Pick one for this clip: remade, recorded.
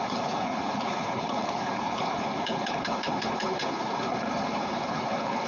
remade